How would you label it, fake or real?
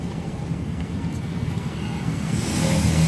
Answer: fake